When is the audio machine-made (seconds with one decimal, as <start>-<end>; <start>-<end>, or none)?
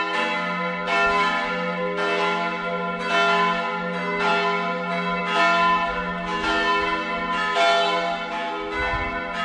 none